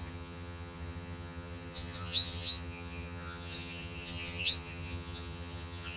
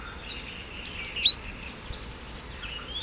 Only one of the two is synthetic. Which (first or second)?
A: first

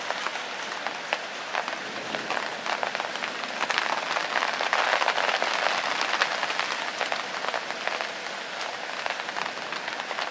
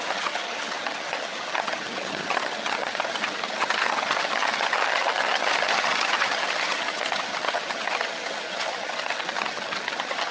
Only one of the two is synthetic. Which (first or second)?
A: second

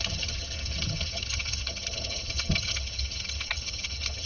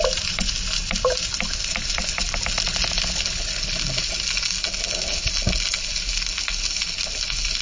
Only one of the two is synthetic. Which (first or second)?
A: first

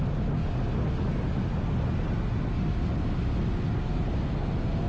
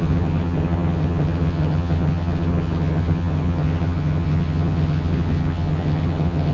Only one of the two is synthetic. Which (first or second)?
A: second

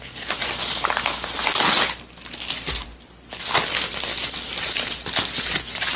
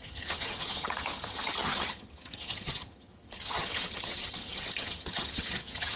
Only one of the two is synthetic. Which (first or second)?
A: second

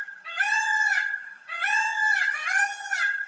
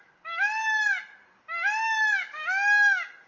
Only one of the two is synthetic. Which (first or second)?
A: first